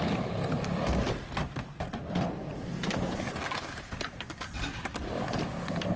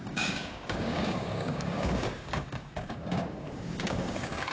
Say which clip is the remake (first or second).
second